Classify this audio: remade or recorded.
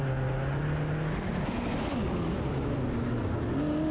recorded